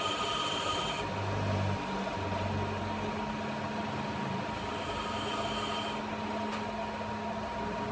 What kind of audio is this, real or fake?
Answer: real